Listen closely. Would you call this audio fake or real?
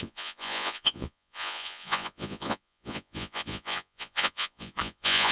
fake